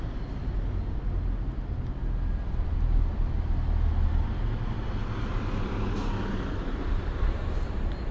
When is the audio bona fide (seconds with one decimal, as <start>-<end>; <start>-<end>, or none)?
0.0-8.1